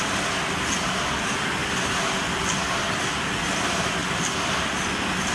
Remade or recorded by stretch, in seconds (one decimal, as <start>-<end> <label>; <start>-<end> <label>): 0.0-5.3 recorded